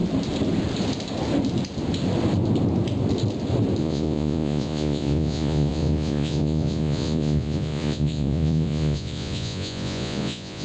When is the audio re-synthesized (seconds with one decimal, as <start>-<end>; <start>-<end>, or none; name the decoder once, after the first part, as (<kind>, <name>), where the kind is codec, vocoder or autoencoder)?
3.8-10.6 (vocoder, Vocos)